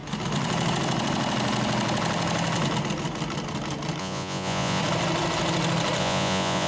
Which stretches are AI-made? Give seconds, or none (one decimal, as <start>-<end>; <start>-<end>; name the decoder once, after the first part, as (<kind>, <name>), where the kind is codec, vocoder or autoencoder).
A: 4.0-4.8 (vocoder, Vocos); 6.0-6.7